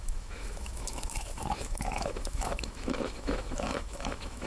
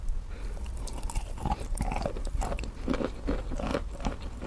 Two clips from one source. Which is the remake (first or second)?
first